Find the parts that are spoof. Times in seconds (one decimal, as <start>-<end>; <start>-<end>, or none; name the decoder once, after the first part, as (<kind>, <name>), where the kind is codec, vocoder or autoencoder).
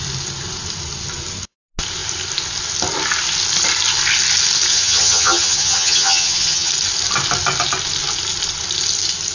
4.7-6.7 (vocoder, HiFi-GAN)